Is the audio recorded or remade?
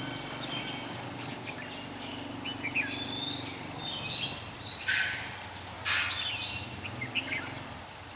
recorded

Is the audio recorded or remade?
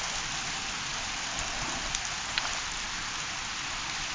recorded